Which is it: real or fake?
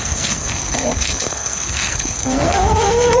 fake